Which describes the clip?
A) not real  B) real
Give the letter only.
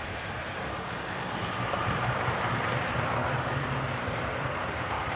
A